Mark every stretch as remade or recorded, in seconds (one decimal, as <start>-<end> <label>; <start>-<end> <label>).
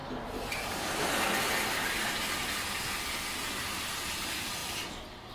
0.0-5.3 recorded